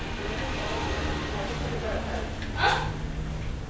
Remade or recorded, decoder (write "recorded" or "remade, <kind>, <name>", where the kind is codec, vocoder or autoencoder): recorded